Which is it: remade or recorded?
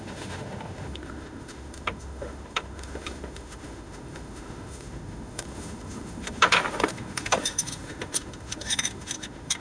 remade